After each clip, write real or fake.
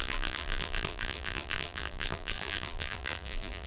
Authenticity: fake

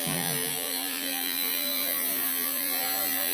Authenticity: fake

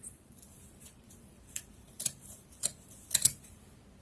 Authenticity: fake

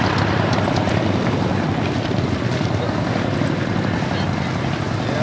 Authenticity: fake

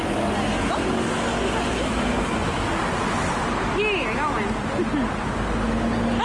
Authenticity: real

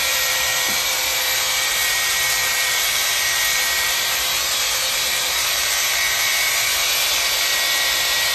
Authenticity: fake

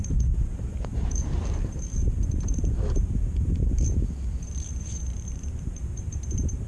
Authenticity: fake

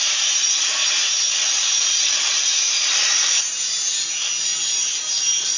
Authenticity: fake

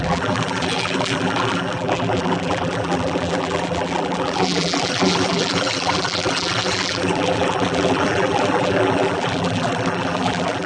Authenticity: fake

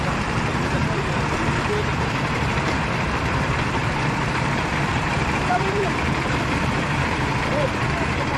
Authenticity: fake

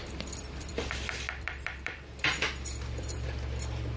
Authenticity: fake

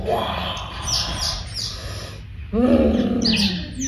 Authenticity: real